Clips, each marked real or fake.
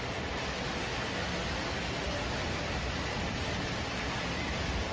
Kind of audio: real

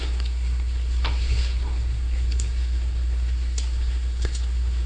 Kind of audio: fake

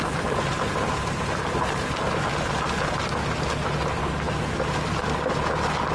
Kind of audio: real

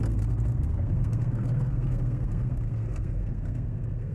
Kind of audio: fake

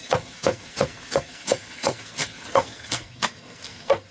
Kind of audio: fake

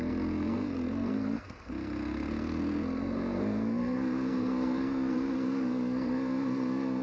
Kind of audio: fake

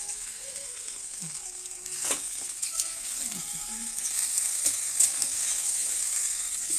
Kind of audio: fake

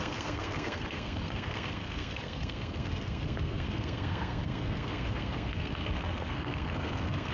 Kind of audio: fake